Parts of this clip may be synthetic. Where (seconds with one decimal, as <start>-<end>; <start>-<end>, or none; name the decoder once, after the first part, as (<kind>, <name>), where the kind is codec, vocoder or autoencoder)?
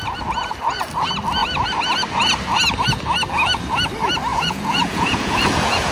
4.3-5.9 (vocoder, Vocos)